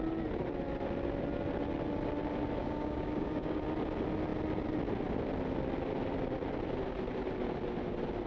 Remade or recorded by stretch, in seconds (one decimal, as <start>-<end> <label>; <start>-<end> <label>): 0.0-2.6 recorded; 2.6-3.6 remade; 3.6-8.3 recorded